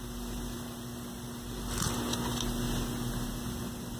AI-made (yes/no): no